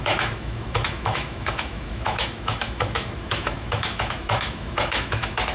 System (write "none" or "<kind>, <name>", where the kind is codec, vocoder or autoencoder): autoencoder, DAC-VAE